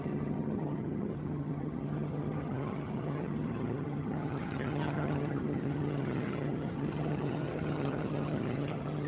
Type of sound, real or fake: fake